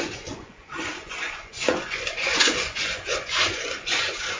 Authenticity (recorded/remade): remade